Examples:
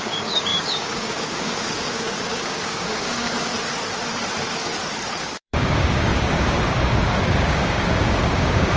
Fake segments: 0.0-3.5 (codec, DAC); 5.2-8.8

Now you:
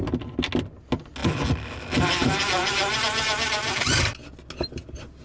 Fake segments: none